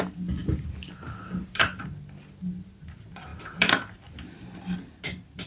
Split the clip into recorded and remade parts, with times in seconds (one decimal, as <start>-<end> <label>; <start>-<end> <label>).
0.0-0.4 recorded; 0.4-1.8 remade; 1.8-3.3 recorded; 3.3-4.1 remade; 4.1-5.5 recorded